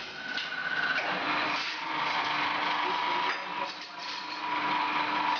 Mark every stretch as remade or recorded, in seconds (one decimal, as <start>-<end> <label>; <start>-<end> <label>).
0.0-3.5 recorded; 3.5-4.2 remade; 4.2-5.4 recorded